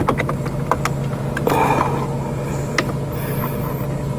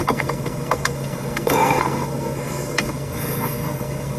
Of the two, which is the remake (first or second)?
second